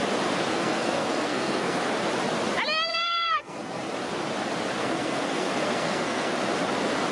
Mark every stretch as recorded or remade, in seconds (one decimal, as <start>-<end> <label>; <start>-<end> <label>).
0.0-0.5 recorded; 0.5-1.8 remade; 1.8-2.9 recorded; 2.9-3.8 remade; 3.8-4.8 recorded; 4.8-6.3 remade; 6.3-7.1 recorded

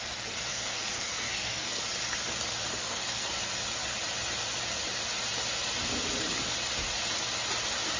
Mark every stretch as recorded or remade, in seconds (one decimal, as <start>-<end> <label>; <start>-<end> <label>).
0.0-0.5 recorded; 0.5-1.8 remade; 1.8-2.8 recorded; 2.8-3.4 remade; 3.4-8.0 recorded

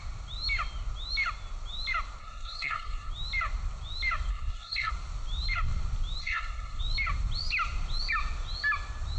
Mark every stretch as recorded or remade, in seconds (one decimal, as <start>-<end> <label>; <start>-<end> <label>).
0.0-2.2 recorded; 2.2-3.1 remade; 3.1-4.3 recorded; 4.3-4.9 remade; 4.9-6.2 recorded; 6.2-6.8 remade; 6.8-9.2 recorded

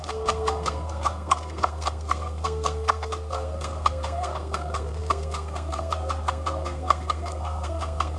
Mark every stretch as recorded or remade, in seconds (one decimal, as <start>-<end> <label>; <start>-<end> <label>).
0.0-8.2 remade

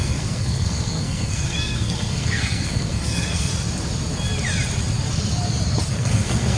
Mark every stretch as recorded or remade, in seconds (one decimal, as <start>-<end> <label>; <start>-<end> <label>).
0.0-3.5 remade; 3.5-5.9 recorded; 5.9-6.6 remade

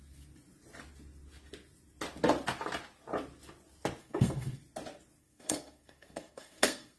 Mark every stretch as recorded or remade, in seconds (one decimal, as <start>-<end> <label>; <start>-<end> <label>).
0.0-4.0 recorded; 4.0-4.6 remade; 4.6-5.2 recorded; 5.2-7.0 remade

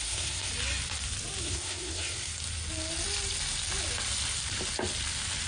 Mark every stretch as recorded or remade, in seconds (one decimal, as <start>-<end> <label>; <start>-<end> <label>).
0.0-0.5 remade; 0.5-1.4 recorded; 1.4-2.3 remade; 2.3-5.5 recorded

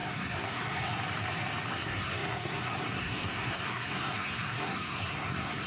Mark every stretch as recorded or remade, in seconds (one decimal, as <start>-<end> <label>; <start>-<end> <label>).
0.0-1.0 remade; 1.0-1.7 recorded; 1.7-5.7 remade